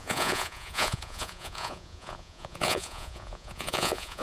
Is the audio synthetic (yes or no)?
yes